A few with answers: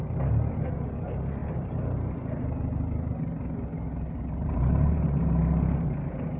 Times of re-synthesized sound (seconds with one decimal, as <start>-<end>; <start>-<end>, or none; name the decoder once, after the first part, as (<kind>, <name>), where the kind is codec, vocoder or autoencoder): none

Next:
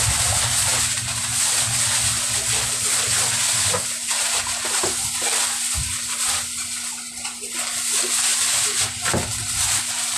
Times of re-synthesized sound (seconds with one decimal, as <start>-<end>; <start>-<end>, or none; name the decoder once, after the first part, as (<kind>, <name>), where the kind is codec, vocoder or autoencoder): none

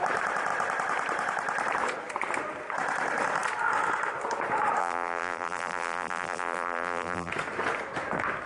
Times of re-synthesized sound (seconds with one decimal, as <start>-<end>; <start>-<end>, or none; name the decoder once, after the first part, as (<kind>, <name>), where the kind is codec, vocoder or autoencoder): 4.8-7.3 (vocoder, BigVGAN v2)

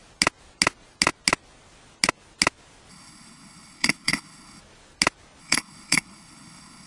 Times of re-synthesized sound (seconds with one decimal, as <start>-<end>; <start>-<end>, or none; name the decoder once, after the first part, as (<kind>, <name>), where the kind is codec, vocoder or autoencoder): 2.9-4.6 (codec, HILCodec); 5.4-6.9

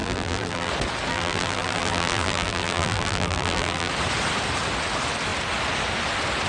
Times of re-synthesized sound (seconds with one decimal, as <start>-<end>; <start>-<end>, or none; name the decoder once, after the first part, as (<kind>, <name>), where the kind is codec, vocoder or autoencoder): 0.0-0.7 (vocoder, BigVGAN v2); 1.1-3.9

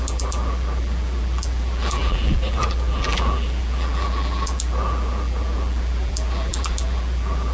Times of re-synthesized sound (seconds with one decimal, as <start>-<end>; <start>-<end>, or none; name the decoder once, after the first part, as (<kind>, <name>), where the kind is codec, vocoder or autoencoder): 0.0-7.5 (vocoder, BigVGAN v2)

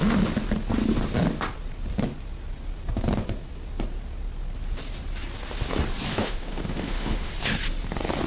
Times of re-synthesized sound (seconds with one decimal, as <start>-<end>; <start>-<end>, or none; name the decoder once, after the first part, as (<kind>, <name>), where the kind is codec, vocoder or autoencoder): 6.1-7.3 (autoencoder, DAC-VAE)

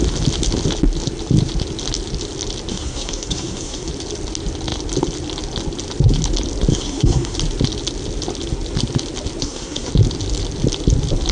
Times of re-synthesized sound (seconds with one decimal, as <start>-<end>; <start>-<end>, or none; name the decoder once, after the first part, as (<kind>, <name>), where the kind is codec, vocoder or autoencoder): 2.7-3.9 (codec, SNAC); 6.7-7.4; 9.4-9.9